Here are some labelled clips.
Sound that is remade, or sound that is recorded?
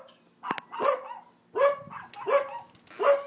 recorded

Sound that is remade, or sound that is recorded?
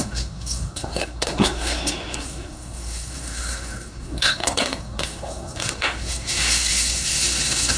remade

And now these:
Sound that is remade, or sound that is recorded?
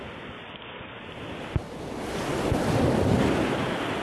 recorded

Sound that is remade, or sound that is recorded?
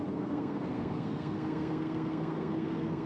remade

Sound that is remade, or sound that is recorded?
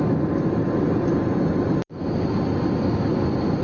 recorded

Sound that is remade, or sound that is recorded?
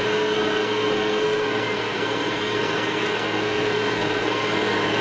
remade